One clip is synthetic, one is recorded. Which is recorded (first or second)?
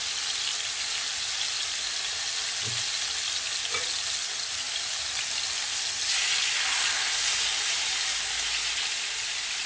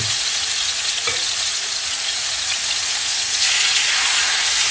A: first